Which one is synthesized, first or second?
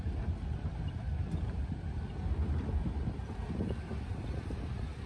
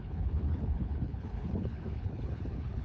second